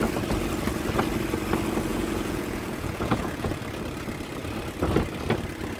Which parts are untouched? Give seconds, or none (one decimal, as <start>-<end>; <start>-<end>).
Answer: 0.0-1.9; 3.6-5.8